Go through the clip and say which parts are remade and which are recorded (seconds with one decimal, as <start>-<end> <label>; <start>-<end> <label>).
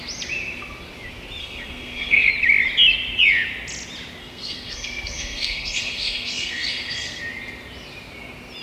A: 0.0-1.4 recorded; 1.4-2.3 remade; 2.3-4.2 recorded; 4.2-7.2 remade; 7.2-8.6 recorded